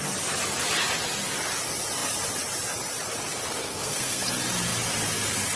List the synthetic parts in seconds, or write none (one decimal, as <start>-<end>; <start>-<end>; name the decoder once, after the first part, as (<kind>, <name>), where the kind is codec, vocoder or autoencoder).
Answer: 3.6-4.2 (codec, SNAC)